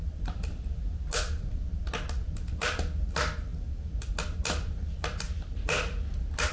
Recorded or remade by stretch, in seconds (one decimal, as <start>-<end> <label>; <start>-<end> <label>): 0.0-6.5 recorded

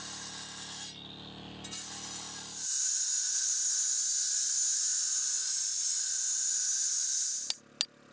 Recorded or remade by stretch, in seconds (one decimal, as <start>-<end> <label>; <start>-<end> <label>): 0.0-8.1 recorded

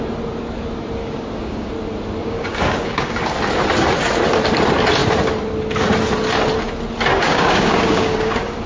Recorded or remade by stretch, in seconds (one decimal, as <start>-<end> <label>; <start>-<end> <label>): 0.0-1.0 recorded; 1.0-1.7 remade; 1.7-2.2 recorded; 2.2-3.3 remade; 3.3-7.1 recorded; 7.1-8.7 remade

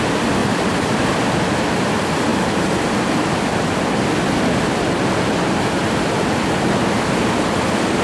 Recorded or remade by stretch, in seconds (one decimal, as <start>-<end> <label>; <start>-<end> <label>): 0.0-0.4 recorded; 0.4-1.1 remade; 1.1-2.3 recorded; 2.3-2.9 remade; 2.9-8.0 recorded

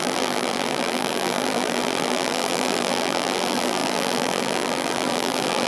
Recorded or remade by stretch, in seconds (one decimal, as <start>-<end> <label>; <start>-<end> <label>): 0.0-5.7 remade